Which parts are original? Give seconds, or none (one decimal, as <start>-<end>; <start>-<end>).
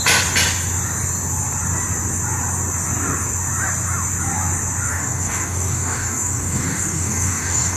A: 0.0-4.9